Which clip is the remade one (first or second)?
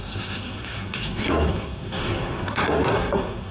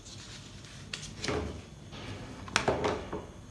first